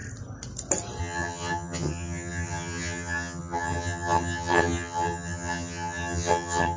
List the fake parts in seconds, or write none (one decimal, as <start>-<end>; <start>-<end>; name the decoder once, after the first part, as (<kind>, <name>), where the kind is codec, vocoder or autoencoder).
1.0-6.8 (vocoder, HiFi-GAN)